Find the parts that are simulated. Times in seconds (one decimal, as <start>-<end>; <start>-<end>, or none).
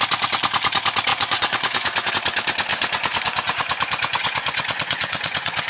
1.1-2.1; 2.7-5.7